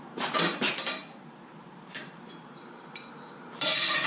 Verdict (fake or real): fake